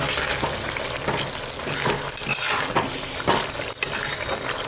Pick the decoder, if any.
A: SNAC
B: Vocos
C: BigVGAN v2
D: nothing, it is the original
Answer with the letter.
D